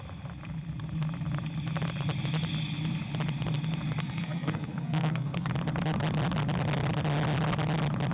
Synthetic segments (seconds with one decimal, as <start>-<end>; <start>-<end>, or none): 4.0-5.5